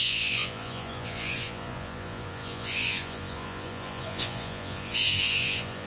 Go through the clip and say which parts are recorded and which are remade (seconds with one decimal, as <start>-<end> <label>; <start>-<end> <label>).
0.0-5.9 remade